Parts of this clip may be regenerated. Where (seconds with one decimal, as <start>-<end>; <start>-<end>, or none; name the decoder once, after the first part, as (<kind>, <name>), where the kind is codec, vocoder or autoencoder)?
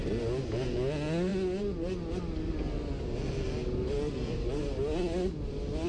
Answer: none